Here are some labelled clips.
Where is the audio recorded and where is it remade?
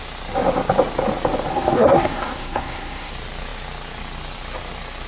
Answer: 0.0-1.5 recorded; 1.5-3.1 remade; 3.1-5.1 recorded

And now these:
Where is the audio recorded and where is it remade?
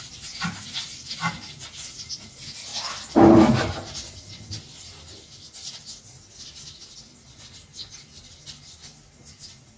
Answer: 0.0-9.8 recorded